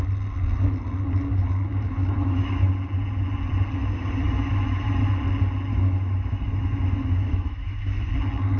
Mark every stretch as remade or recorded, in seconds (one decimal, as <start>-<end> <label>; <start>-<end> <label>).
0.0-1.7 recorded; 1.7-2.7 remade; 2.7-3.8 recorded; 3.8-5.1 remade; 5.1-5.7 recorded; 5.7-8.1 remade; 8.1-8.6 recorded